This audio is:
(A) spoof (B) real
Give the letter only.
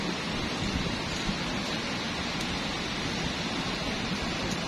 B